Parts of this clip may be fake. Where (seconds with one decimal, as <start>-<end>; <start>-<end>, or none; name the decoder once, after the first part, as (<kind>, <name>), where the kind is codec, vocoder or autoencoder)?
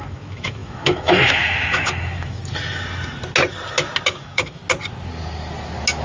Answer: 0.0-2.4 (autoencoder, DAC-VAE); 4.1-4.6